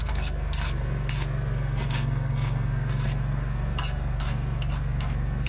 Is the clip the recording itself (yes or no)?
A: no